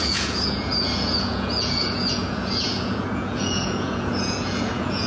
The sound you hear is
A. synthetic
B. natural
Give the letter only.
A